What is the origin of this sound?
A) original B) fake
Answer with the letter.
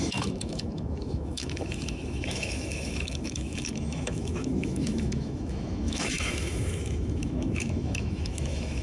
B